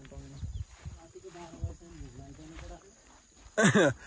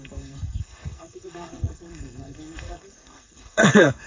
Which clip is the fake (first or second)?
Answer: second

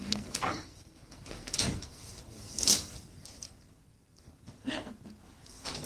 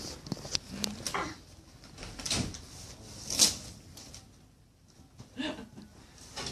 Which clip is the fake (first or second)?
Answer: first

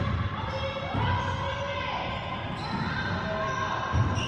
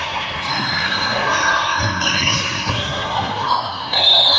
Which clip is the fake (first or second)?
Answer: second